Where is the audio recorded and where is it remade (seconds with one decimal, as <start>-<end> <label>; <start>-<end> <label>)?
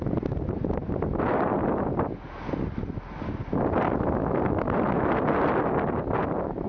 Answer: 0.0-6.7 recorded